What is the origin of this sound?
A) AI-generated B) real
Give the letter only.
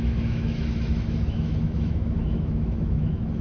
A